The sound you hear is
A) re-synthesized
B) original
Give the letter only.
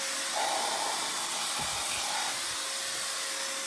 B